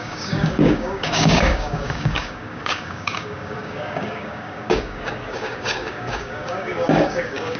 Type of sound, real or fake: fake